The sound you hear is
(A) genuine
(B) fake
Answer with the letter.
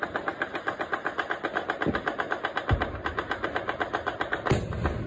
A